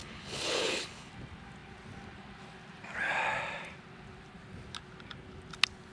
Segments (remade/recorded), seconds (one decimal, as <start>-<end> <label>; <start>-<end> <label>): 0.0-1.1 remade; 1.1-5.9 recorded